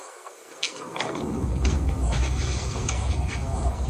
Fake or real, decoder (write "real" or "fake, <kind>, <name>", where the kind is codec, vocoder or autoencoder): fake, codec, SNAC